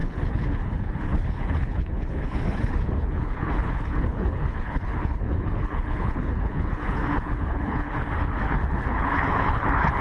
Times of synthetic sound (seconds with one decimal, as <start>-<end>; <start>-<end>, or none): 0.0-10.0